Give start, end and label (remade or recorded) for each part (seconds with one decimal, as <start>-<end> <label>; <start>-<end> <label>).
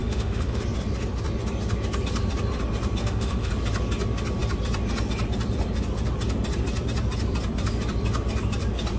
0.0-0.6 remade; 0.6-3.0 recorded; 3.0-3.5 remade; 3.5-9.0 recorded